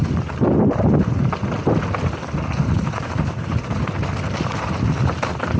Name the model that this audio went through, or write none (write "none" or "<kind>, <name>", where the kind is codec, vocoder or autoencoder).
none